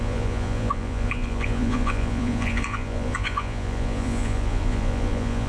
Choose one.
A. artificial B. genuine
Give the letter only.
A